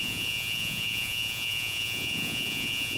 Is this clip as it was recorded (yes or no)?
no